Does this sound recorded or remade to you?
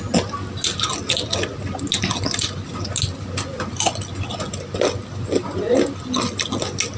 recorded